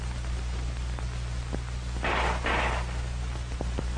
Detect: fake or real real